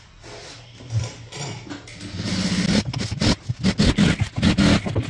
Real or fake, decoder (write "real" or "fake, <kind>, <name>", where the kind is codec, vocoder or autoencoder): real